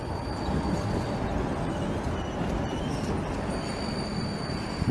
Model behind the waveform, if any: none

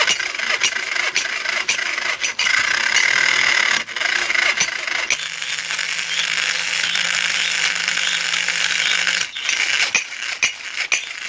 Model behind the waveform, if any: none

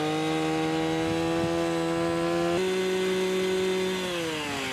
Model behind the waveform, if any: none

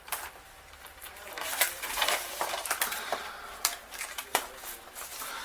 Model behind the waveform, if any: vocoder, BigVGAN v2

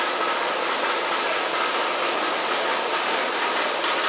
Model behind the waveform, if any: none